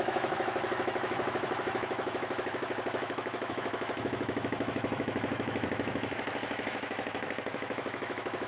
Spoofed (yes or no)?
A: yes